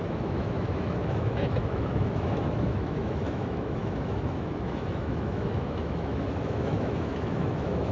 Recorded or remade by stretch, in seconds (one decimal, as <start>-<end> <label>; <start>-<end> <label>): 0.0-7.9 remade